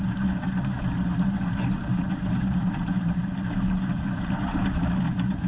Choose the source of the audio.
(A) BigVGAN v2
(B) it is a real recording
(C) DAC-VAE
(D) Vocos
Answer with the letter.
A